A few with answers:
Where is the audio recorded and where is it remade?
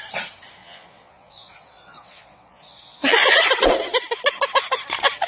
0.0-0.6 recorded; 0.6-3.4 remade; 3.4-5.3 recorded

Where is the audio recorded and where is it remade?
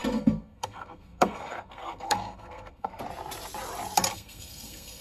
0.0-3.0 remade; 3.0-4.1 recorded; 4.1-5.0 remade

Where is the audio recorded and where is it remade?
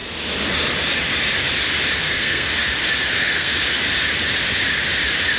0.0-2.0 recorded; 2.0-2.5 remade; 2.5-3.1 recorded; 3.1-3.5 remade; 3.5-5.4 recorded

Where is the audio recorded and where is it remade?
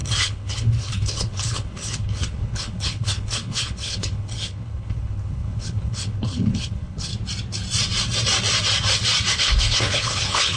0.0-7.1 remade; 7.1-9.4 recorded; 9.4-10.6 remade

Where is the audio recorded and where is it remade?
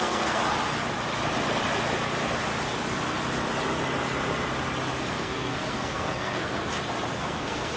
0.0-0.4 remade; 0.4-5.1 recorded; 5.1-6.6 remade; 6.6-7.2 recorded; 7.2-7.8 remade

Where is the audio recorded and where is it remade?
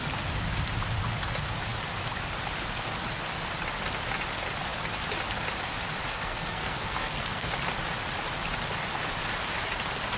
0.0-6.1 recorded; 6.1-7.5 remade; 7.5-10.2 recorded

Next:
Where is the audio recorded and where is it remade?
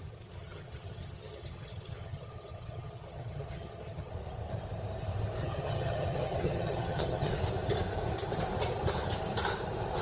0.0-4.1 remade; 4.1-5.4 recorded; 5.4-7.3 remade; 7.3-10.0 recorded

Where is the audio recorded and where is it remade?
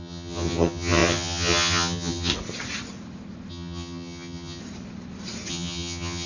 0.0-2.3 remade; 2.3-3.5 recorded; 3.5-4.6 remade; 4.6-5.5 recorded; 5.5-6.3 remade